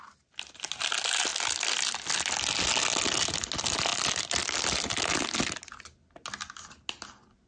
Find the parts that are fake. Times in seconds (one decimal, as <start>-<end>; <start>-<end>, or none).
1.3-1.9; 3.9-5.6